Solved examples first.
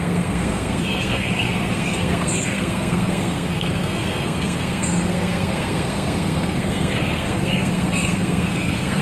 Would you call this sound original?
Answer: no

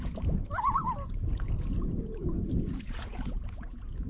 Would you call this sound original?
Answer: no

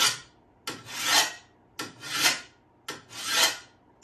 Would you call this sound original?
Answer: yes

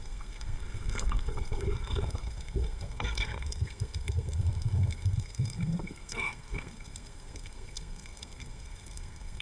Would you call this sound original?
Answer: no